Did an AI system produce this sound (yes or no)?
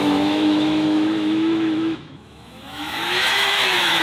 yes